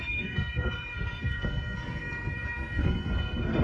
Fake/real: fake